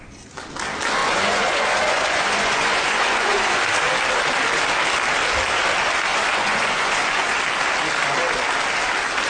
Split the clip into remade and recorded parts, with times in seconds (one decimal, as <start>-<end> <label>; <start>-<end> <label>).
0.0-1.0 recorded; 1.0-3.6 remade; 3.6-6.1 recorded; 6.1-7.4 remade; 7.4-9.3 recorded